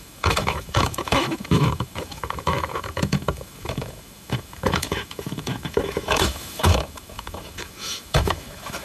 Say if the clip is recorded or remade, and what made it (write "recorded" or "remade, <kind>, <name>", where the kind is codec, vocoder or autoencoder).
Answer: remade, autoencoder, DAC-VAE